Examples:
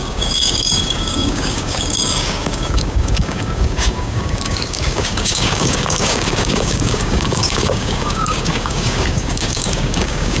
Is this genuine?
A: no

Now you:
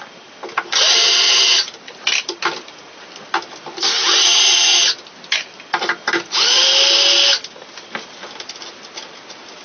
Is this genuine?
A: yes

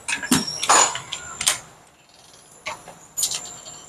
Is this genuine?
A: yes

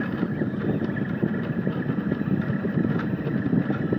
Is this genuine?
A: yes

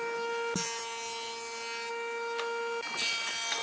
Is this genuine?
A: yes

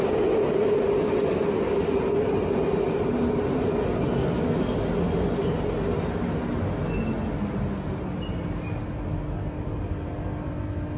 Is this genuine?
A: yes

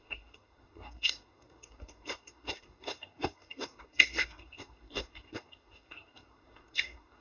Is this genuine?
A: no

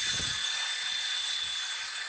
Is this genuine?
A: yes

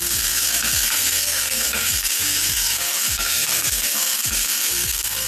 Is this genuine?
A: no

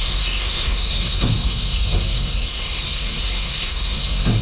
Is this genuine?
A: no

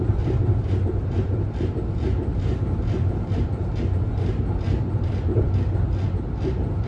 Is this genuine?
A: yes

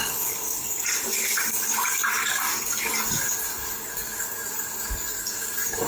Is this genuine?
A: no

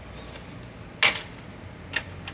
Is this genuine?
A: yes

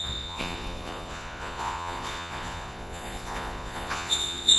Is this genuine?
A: no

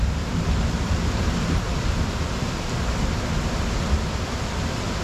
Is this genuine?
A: yes